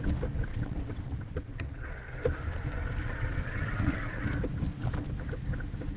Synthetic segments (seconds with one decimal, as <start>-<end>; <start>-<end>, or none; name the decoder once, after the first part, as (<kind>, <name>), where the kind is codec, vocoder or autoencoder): 0.5-1.9 (vocoder, WaveNeXt); 3.0-4.2